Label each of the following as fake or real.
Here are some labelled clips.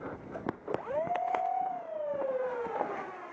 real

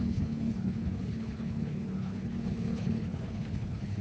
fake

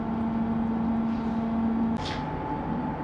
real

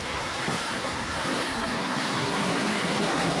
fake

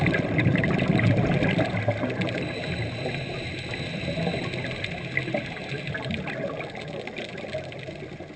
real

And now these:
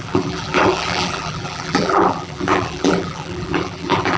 fake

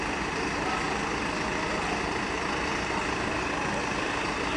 real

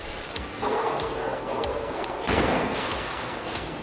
fake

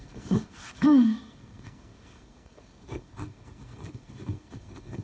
fake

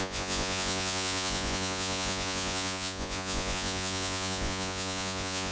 fake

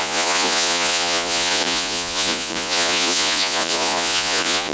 fake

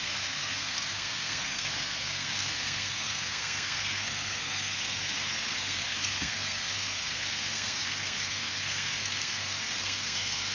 fake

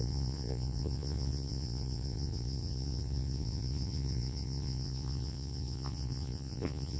fake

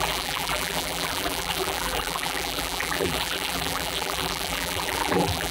fake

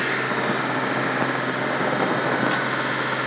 real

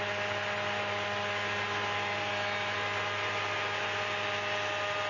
real